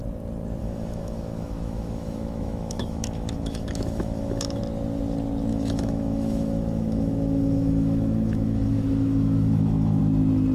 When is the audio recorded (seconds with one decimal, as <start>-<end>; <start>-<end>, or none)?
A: 0.0-0.6; 4.6-5.5; 10.0-10.5